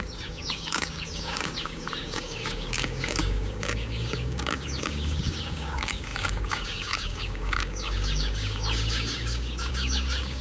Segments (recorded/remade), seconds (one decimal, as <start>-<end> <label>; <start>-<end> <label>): 0.0-10.4 remade